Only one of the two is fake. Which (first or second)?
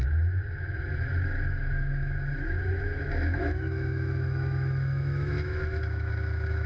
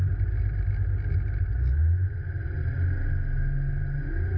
first